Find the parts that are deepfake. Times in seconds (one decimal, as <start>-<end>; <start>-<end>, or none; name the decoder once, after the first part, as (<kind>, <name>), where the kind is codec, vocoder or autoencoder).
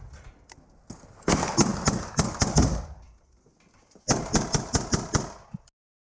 none